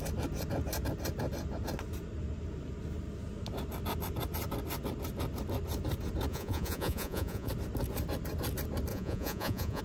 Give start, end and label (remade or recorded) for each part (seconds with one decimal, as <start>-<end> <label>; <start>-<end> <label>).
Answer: 0.0-6.3 recorded; 6.3-7.5 remade; 7.5-8.9 recorded; 8.9-9.8 remade